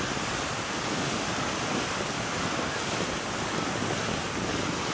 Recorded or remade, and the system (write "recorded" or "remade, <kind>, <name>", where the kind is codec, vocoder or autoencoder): recorded